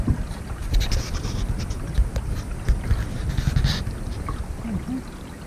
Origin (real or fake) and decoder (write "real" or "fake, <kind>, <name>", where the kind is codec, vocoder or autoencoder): real